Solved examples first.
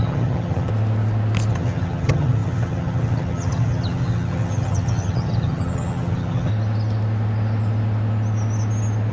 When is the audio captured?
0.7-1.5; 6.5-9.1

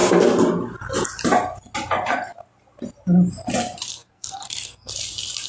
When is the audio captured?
0.0-3.9; 4.9-5.5

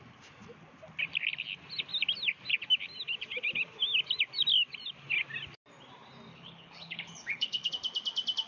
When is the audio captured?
0.0-6.3; 7.7-8.5

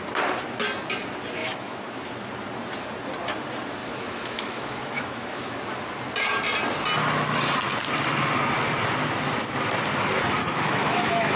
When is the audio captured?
0.0-1.4; 2.1-3.8; 5.6-10.4

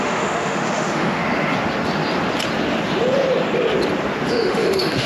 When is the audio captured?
1.2-4.3